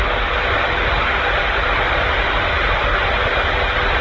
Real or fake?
real